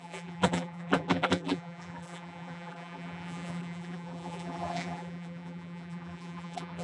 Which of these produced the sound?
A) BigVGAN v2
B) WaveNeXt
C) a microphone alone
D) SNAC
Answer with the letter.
A